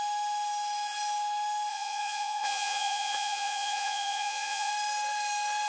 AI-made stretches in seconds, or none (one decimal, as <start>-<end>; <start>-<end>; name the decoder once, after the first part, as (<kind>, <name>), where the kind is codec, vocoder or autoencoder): 1.7-4.7 (vocoder, Vocos)

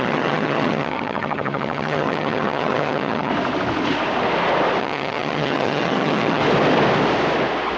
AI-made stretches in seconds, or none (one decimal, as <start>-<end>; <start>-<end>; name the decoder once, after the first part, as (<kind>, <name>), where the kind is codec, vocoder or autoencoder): 0.0-3.3 (vocoder, HiFi-GAN); 4.8-6.4

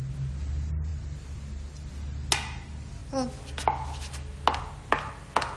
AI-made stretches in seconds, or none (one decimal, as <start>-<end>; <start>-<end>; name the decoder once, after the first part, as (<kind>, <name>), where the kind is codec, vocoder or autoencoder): none